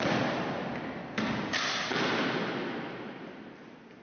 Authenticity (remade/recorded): recorded